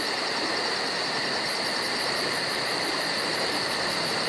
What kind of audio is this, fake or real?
fake